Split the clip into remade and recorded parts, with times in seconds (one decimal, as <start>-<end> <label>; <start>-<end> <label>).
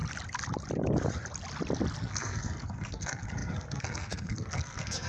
0.0-2.0 recorded; 2.0-5.1 remade